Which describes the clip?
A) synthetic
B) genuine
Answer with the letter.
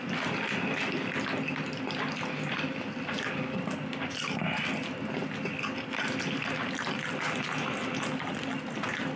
B